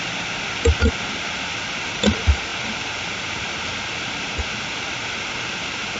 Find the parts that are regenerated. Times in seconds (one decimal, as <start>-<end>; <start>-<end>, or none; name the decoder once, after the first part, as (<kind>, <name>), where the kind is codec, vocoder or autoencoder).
none

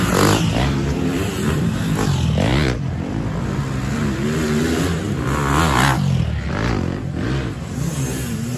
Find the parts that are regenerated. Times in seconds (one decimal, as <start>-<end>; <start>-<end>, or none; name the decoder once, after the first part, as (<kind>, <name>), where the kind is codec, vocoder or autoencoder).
none

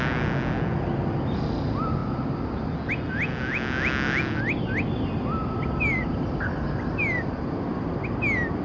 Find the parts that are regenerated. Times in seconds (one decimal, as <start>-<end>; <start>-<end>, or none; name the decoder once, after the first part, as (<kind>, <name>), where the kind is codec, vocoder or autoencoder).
none

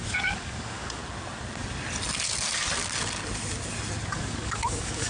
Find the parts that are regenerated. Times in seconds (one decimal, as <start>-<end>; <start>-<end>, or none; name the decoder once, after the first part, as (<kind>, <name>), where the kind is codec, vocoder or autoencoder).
0.0-1.0 (codec, DAC); 4.1-5.1

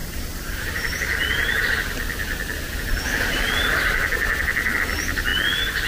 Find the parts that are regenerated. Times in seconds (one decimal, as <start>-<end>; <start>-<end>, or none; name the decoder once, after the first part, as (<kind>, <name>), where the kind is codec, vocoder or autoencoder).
0.0-1.6 (vocoder, BigVGAN v2); 5.3-5.9

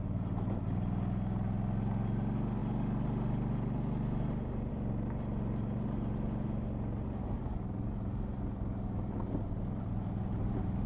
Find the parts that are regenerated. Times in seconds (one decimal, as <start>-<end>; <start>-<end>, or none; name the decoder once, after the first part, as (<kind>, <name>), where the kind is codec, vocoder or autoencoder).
none

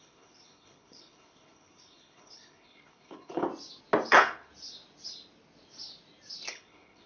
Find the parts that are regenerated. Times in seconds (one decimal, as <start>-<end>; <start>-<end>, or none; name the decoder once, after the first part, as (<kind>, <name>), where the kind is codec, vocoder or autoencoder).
0.0-3.5 (codec, HILCodec); 4.1-4.5; 6.5-7.1